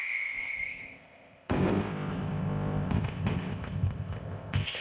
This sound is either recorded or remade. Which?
remade